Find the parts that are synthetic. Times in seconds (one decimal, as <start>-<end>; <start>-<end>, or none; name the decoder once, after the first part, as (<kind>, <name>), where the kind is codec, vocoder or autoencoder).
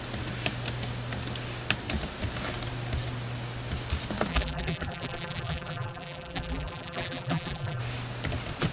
4.3-7.8 (vocoder, BigVGAN v2)